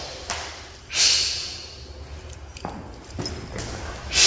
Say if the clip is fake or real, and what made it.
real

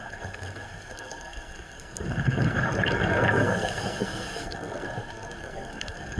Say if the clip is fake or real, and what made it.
fake, codec, SNAC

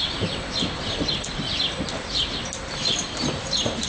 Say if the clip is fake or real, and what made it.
real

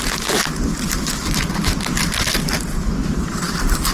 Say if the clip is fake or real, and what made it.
real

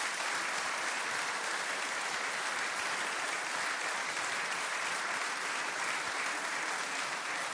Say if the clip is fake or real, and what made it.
real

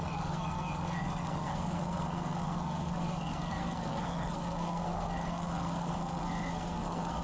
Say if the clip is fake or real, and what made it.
fake, codec, SNAC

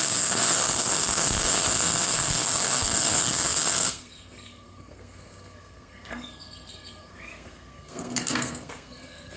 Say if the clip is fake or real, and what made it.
fake, codec, SNAC